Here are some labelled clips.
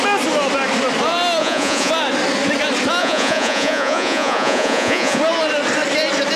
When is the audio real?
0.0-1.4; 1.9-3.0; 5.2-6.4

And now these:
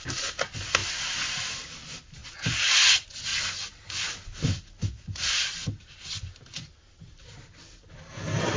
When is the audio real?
0.0-8.6

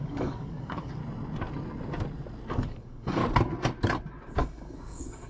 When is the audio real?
1.0-2.5; 3.2-4.3

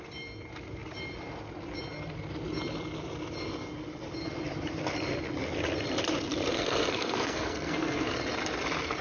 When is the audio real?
0.0-6.5; 8.1-9.0